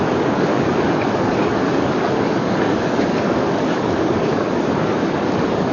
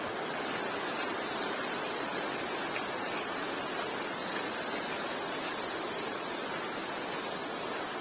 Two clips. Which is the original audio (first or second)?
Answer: second